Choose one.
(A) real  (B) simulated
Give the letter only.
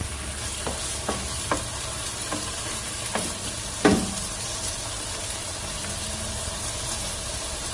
A